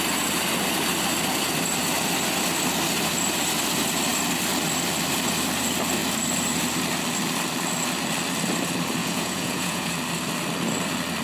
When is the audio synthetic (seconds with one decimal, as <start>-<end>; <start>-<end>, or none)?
9.0-9.9